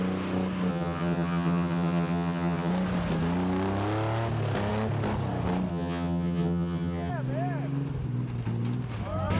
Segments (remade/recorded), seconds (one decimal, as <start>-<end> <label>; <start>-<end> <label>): 0.0-0.7 recorded; 0.7-2.7 remade; 2.7-5.7 recorded; 5.7-7.1 remade; 7.1-9.4 recorded